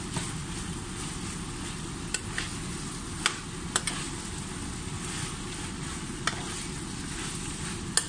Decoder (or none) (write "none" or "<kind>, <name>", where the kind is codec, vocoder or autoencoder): none